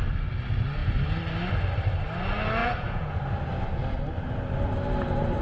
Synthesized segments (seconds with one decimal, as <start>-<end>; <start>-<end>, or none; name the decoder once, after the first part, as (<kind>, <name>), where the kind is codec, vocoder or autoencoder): 2.6-3.2 (vocoder, Vocos)